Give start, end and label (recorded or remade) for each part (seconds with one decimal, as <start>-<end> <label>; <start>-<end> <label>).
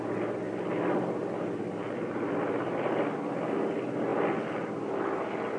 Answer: 0.0-1.2 recorded; 1.2-3.3 remade; 3.3-4.1 recorded; 4.1-4.9 remade; 4.9-5.6 recorded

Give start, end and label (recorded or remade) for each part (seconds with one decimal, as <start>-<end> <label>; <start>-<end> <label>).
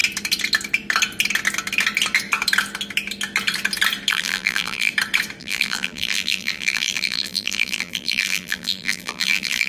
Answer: 0.0-4.1 recorded; 4.1-4.9 remade; 4.9-5.4 recorded; 5.4-9.7 remade